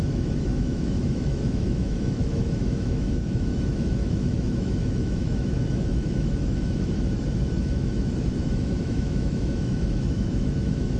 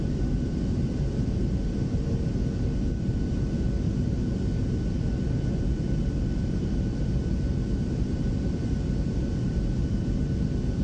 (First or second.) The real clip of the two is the second